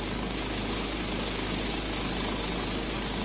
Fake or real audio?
real